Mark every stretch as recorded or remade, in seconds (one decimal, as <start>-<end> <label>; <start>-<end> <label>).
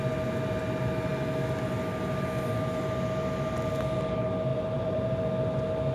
0.0-4.5 recorded; 4.5-5.2 remade; 5.2-5.9 recorded